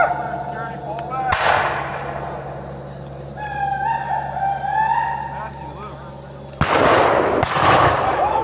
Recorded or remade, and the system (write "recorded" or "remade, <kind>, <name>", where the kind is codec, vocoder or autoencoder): recorded